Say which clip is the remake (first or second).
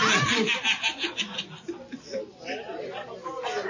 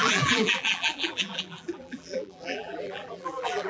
second